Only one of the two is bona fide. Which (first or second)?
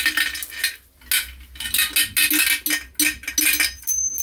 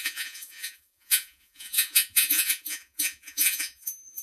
first